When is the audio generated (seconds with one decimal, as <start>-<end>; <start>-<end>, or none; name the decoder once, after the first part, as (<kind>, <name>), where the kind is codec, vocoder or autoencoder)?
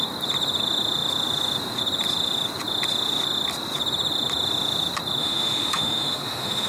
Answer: 5.2-6.7 (autoencoder, DAC-VAE)